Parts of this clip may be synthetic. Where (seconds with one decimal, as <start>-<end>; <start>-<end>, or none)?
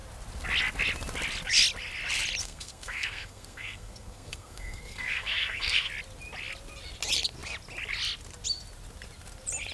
2.4-5.9